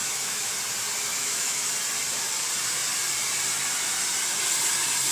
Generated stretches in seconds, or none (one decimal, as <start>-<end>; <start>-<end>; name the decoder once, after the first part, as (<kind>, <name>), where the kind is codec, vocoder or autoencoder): 0.0-0.5 (autoencoder, DAC-VAE); 1.1-1.7